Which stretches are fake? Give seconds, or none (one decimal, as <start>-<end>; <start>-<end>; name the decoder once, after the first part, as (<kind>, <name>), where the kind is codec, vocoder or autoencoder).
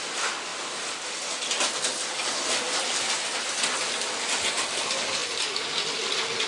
none